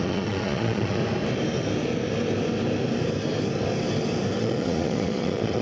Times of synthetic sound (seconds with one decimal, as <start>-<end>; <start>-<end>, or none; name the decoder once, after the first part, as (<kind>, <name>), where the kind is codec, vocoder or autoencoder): 0.0-1.0 (vocoder, Vocos); 4.4-5.6